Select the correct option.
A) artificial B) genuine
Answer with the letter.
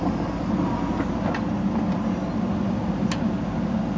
B